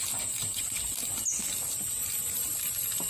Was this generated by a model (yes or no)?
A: no